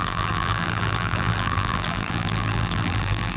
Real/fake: fake